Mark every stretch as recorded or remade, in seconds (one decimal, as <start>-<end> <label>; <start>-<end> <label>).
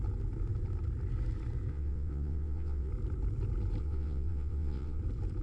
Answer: 0.0-1.7 recorded; 1.7-2.9 remade; 2.9-3.8 recorded; 3.8-5.0 remade; 5.0-5.4 recorded